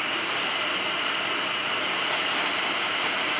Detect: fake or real real